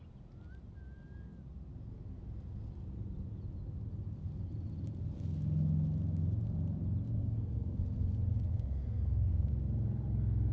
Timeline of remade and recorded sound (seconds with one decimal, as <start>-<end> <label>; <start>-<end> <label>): 0.0-7.2 recorded; 7.2-7.8 remade; 7.8-8.5 recorded; 8.5-9.5 remade; 9.5-10.5 recorded